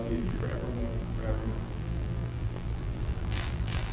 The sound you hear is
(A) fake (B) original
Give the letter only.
A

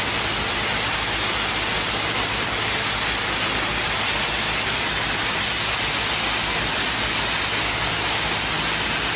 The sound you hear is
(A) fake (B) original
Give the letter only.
B